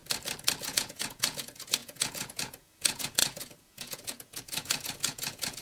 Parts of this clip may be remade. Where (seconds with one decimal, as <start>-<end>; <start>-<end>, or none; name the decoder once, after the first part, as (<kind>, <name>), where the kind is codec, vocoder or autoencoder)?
0.6-5.6 (vocoder, Vocos)